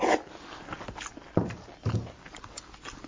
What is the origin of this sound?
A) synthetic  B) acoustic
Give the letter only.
B